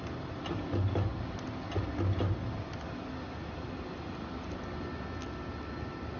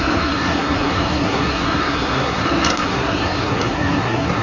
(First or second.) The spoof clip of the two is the second